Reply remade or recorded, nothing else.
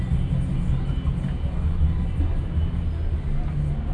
recorded